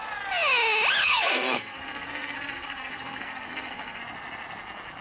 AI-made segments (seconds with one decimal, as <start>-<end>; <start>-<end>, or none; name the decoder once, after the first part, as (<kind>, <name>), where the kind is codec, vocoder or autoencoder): 1.0-4.0 (codec, SNAC)